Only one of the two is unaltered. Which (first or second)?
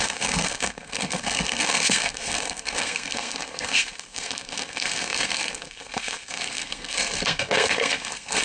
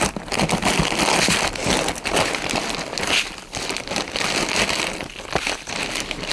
second